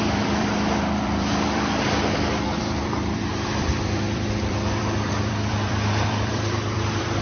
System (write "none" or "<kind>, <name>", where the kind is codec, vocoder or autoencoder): vocoder, BigVGAN v2